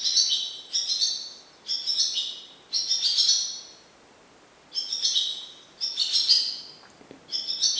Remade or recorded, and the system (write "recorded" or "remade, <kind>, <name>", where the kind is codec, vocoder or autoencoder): recorded